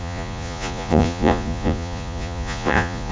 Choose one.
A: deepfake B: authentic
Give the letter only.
A